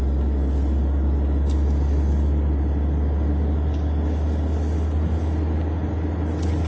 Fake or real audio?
real